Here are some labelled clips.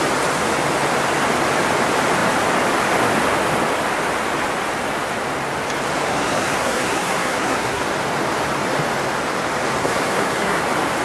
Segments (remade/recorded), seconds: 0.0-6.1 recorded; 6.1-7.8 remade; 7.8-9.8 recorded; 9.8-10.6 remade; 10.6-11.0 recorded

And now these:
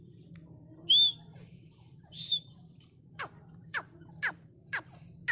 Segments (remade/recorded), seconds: 0.0-1.3 recorded; 1.3-4.5 remade; 4.5-5.3 recorded

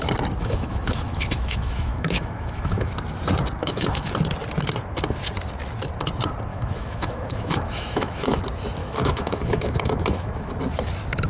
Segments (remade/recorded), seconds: 0.0-0.4 recorded; 0.4-2.9 remade; 2.9-3.6 recorded; 3.6-4.1 remade; 4.1-6.5 recorded; 6.5-8.4 remade; 8.4-8.8 recorded; 8.8-10.5 remade; 10.5-11.3 recorded

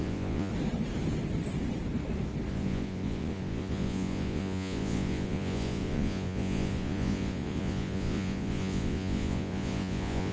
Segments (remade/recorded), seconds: 0.0-0.5 remade; 0.5-2.5 recorded; 2.5-10.3 remade

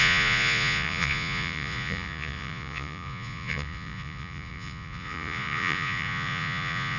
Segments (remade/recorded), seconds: 0.0-7.0 remade

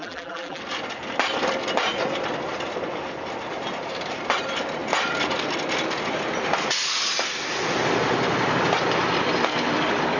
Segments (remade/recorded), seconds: 0.0-0.6 remade; 0.6-10.2 recorded

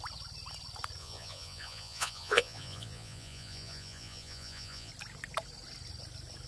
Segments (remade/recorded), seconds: 0.0-1.0 recorded; 1.0-4.9 remade; 4.9-6.5 recorded

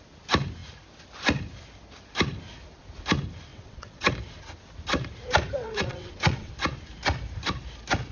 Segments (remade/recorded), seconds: 0.0-3.5 recorded; 3.5-4.1 remade; 4.1-5.6 recorded; 5.6-6.5 remade; 6.5-8.1 recorded